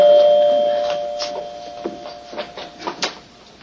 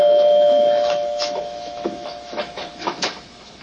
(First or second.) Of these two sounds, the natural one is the first